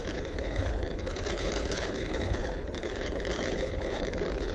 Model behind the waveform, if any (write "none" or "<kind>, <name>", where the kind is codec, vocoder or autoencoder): codec, HILCodec